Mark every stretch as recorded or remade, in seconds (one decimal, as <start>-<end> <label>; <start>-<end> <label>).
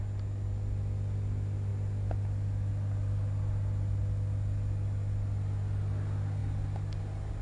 0.0-7.4 recorded